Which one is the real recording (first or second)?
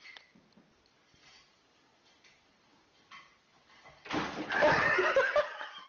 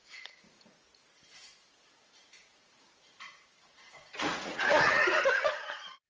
first